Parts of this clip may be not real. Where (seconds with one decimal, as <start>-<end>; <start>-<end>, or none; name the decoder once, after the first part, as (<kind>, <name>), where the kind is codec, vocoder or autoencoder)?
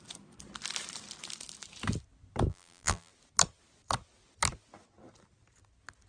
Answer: 2.5-3.1 (vocoder, BigVGAN v2)